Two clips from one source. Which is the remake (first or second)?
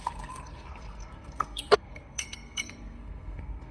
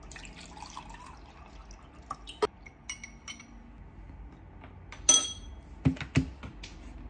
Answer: first